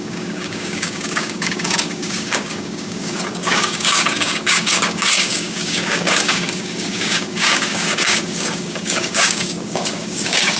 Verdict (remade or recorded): remade